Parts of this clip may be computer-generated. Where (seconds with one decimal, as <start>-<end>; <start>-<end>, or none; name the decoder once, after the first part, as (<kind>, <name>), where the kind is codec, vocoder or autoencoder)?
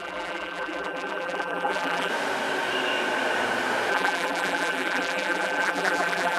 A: 0.0-2.1 (vocoder, BigVGAN v2); 3.9-6.4